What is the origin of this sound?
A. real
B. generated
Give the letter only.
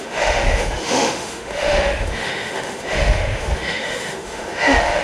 B